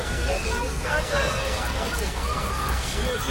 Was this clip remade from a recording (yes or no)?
yes